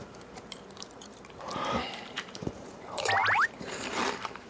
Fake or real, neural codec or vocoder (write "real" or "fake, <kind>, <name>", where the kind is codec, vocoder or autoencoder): fake, vocoder, BigVGAN v2